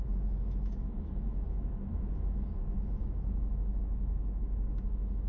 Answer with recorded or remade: remade